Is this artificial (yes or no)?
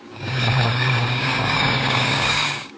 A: yes